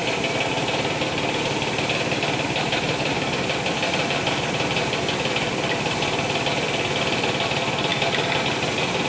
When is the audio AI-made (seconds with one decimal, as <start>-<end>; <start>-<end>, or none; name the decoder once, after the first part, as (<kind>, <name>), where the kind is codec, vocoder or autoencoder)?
0.0-7.9 (vocoder, BigVGAN v2); 8.7-9.1